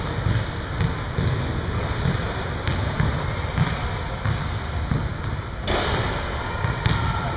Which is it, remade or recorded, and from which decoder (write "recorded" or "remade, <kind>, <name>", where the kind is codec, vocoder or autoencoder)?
recorded